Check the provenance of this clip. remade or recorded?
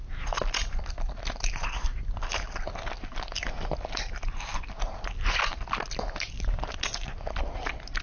recorded